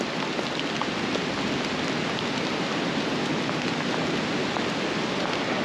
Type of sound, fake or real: real